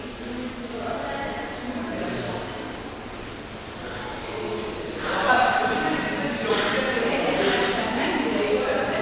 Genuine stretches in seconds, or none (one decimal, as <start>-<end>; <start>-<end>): 0.0-9.0